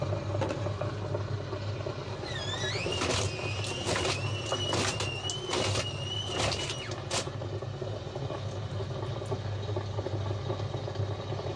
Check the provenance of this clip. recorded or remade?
recorded